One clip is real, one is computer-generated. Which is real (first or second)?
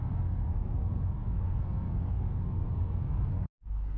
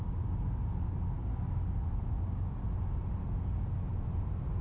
second